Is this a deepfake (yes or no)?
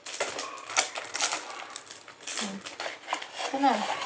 no